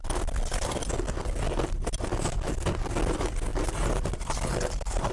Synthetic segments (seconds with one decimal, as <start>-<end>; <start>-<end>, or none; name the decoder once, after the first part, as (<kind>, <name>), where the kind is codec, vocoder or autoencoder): 0.0-0.9 (vocoder, BigVGAN v2); 3.5-5.1